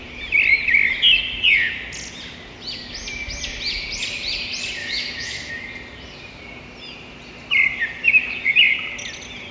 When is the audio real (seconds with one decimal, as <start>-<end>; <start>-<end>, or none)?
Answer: 0.0-4.8; 5.5-9.5